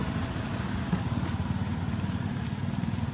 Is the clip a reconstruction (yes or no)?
no